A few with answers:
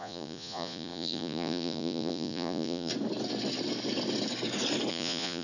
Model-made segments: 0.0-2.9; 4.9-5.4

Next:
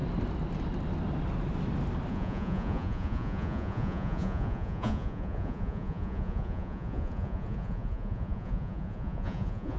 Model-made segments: 2.1-9.8

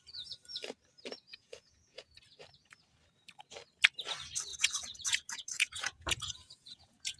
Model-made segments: 1.3-2.2; 4.5-7.2

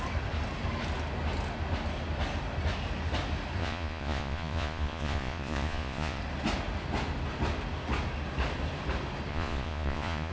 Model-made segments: 3.6-6.2; 9.3-10.3

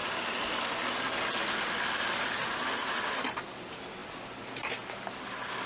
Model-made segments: none

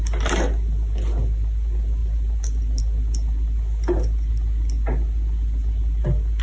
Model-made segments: none